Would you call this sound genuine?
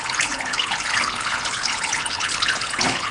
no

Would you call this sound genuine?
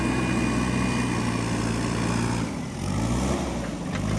yes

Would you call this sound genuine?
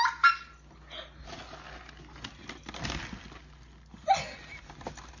yes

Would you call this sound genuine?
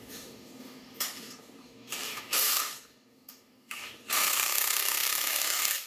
no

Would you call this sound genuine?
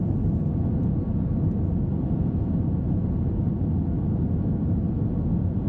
yes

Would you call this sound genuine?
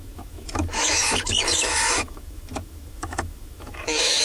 no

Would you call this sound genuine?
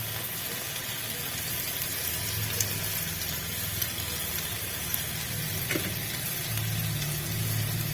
yes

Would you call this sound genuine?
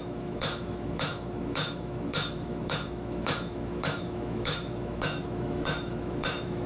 no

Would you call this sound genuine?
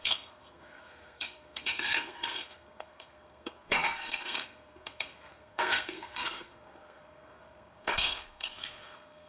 no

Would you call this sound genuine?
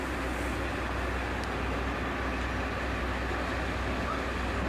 yes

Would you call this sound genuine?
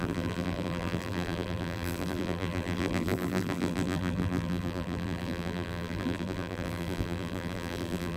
no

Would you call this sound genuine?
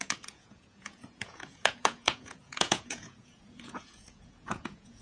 no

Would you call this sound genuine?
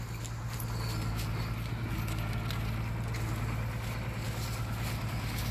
yes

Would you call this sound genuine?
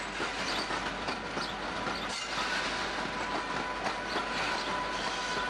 yes